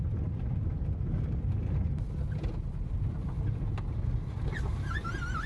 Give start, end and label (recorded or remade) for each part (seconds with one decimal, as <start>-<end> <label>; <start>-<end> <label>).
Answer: 0.0-2.7 recorded; 2.7-3.8 remade; 3.8-5.5 recorded